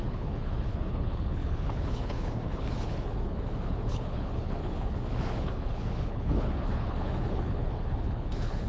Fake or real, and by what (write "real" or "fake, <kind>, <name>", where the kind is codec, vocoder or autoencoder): fake, codec, HILCodec